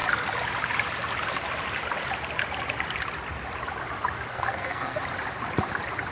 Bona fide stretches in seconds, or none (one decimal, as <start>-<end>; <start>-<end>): 0.0-4.3; 5.0-6.1